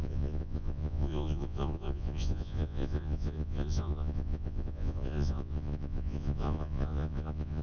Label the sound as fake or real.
fake